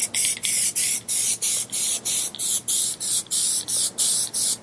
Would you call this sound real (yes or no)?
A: yes